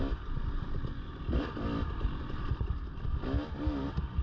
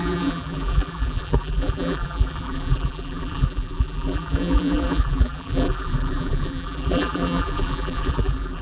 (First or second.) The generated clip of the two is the second